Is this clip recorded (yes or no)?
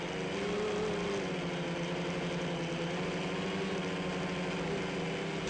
yes